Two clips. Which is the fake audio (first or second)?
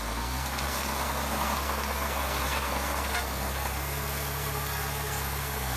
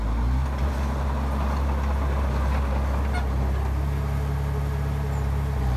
first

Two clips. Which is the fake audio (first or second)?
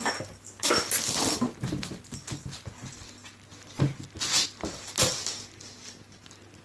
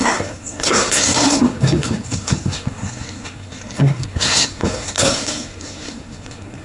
second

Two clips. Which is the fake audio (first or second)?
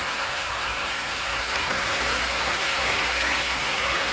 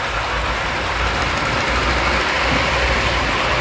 first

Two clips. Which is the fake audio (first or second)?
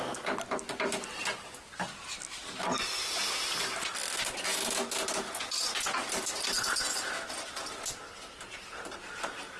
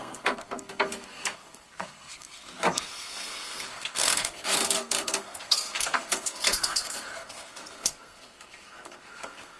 second